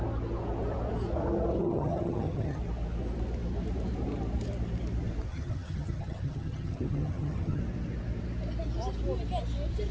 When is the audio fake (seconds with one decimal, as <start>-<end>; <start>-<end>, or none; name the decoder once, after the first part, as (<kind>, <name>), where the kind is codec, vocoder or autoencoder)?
1.6-2.6 (vocoder, HiFi-GAN); 5.3-7.6